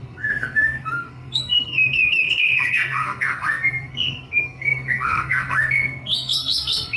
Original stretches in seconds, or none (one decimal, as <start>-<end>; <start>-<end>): none